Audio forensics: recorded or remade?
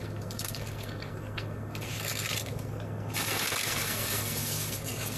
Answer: remade